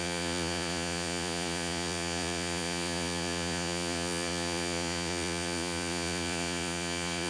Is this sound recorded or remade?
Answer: remade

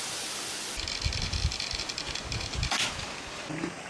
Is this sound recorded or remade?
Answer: recorded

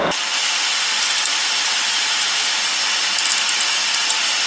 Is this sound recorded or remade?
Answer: recorded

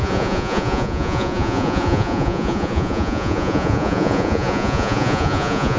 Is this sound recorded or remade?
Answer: remade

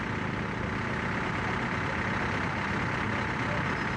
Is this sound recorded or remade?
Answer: recorded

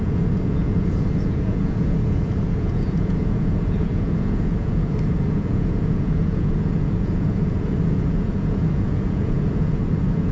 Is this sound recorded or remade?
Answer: remade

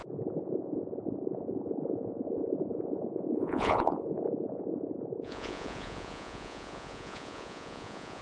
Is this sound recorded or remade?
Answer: remade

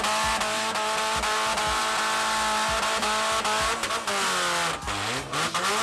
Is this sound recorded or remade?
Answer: recorded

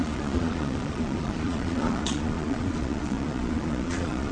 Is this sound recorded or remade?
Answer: remade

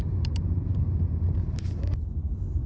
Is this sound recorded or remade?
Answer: recorded